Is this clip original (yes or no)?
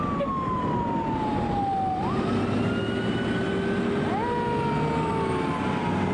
yes